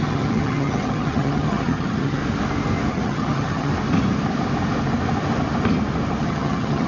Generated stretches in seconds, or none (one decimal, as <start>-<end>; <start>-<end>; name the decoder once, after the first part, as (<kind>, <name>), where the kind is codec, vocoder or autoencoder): 0.0-2.2 (vocoder, HiFi-GAN); 2.9-3.7; 6.2-6.9